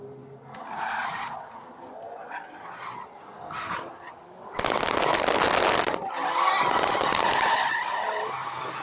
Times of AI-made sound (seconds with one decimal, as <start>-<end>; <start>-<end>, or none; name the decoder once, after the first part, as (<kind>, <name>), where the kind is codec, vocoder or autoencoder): none